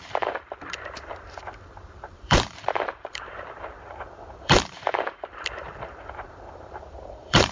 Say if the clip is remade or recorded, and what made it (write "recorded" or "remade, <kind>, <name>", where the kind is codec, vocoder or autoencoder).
remade, vocoder, BigVGAN v2